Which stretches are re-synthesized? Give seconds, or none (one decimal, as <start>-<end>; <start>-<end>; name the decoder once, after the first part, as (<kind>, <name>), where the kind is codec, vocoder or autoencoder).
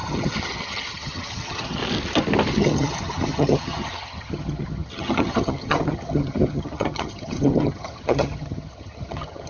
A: 0.0-1.8 (vocoder, HiFi-GAN); 2.5-9.5